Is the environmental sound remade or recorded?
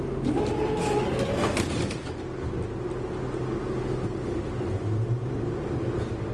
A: recorded